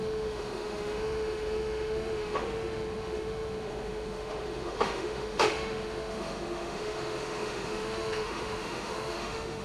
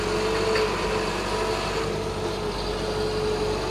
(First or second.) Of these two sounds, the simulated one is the first